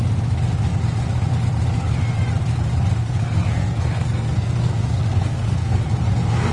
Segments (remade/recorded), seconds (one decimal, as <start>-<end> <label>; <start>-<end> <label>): 0.0-3.0 recorded; 3.0-5.8 remade; 5.8-6.5 recorded